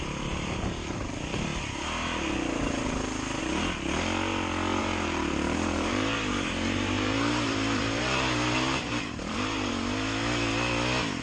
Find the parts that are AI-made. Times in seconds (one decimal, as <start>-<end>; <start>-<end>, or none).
4.8-9.7